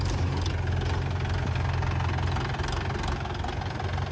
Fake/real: real